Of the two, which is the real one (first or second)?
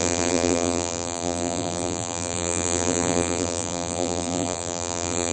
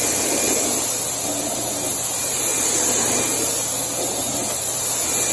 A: second